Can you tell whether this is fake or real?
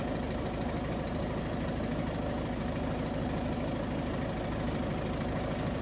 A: real